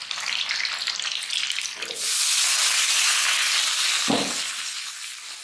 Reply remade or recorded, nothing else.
recorded